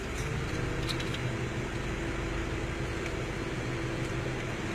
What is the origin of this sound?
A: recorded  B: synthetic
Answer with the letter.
A